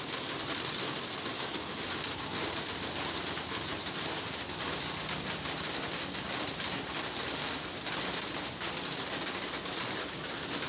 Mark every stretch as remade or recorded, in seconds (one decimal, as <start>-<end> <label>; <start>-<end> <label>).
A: 0.0-10.7 recorded